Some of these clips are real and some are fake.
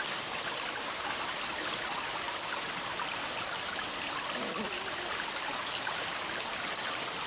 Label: real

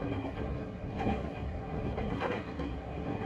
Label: fake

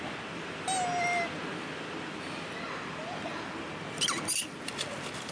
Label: real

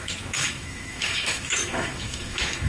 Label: fake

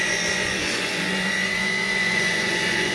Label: fake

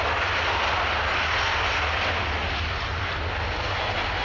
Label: real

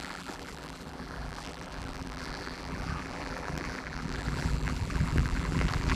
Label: fake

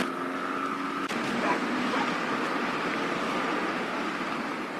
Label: real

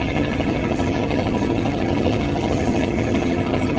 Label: fake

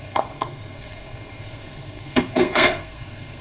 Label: fake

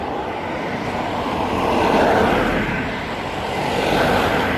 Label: fake